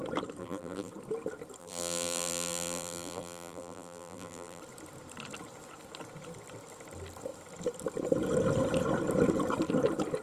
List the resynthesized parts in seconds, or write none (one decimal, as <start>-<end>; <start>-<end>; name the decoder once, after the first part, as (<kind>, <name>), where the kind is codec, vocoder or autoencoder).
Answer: 0.4-0.9 (vocoder, BigVGAN v2); 1.6-4.6